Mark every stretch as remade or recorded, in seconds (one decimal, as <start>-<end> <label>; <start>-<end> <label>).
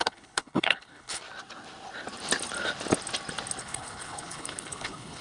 0.0-1.2 remade; 1.2-3.6 recorded; 3.6-5.2 remade